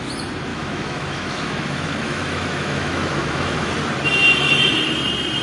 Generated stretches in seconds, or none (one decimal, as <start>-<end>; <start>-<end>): 0.5-3.7